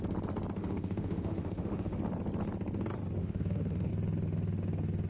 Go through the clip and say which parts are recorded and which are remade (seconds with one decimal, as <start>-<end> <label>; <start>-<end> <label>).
0.0-0.6 recorded; 0.6-2.0 remade; 2.0-3.2 recorded; 3.2-3.9 remade; 3.9-5.1 recorded